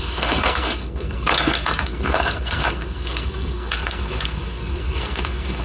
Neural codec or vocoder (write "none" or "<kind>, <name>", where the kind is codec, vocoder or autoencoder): codec, SNAC